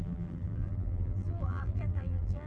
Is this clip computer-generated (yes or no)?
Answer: yes